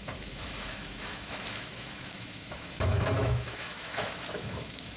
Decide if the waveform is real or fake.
fake